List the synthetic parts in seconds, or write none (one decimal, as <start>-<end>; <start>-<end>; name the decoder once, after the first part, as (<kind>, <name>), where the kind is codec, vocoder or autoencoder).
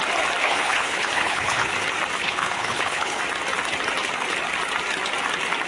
0.4-1.7 (codec, HILCodec); 2.2-3.2